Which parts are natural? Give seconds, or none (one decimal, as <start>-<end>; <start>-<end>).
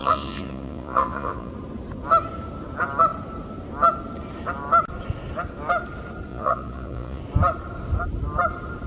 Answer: 1.5-6.3; 7.2-8.9